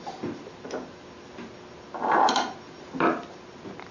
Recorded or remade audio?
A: recorded